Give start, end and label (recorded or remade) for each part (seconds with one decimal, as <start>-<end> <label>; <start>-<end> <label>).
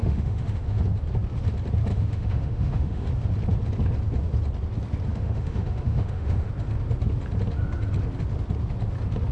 0.0-0.8 remade; 0.8-1.9 recorded; 1.9-3.1 remade; 3.1-5.1 recorded; 5.1-6.5 remade; 6.5-9.3 recorded